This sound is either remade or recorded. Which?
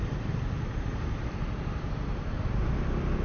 remade